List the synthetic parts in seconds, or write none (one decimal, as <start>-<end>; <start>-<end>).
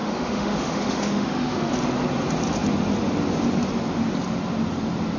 0.0-1.7